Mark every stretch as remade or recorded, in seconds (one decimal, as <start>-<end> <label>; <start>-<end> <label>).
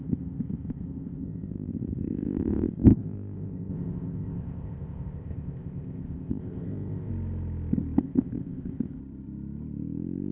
0.0-7.1 remade; 7.1-8.0 recorded; 8.0-9.0 remade; 9.0-10.3 recorded